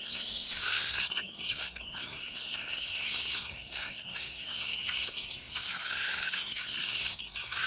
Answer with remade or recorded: remade